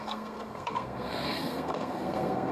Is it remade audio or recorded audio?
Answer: remade